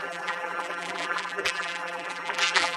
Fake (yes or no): yes